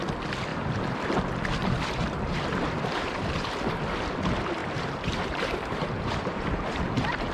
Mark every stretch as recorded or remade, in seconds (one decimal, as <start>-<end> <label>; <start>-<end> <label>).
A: 0.0-0.5 recorded; 0.5-1.1 remade; 1.1-1.6 recorded; 1.6-3.7 remade; 3.7-4.6 recorded; 4.6-7.3 remade